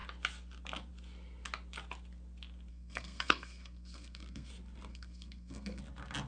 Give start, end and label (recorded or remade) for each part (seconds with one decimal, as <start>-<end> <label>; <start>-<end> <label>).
0.0-2.7 recorded; 2.7-4.5 remade; 4.5-4.9 recorded; 4.9-5.8 remade; 5.8-6.3 recorded